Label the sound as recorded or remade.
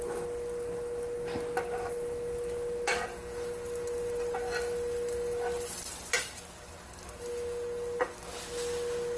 recorded